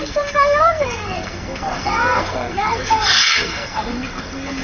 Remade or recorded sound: remade